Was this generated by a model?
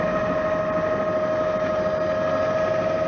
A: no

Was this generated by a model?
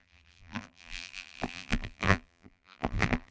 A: yes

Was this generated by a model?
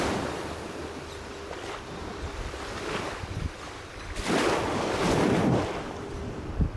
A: no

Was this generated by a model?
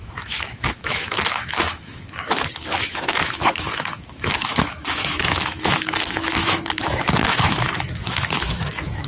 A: yes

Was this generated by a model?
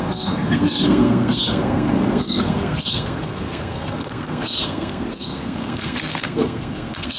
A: yes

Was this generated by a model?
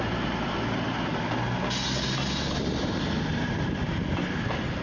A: no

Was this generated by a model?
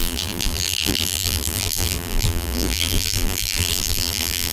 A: yes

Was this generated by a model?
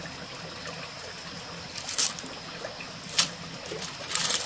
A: no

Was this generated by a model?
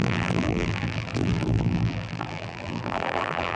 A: yes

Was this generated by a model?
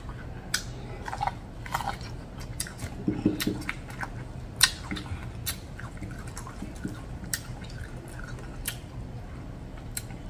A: no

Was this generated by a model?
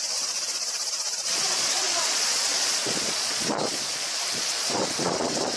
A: yes